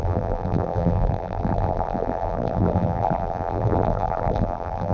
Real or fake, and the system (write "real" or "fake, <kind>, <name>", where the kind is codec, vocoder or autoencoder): fake, vocoder, BigVGAN v2